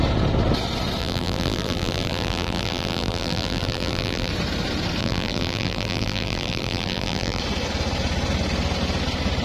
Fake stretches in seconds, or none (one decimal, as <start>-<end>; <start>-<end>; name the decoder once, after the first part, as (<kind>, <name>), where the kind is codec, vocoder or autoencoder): 1.0-4.3 (vocoder, BigVGAN v2); 5.0-7.4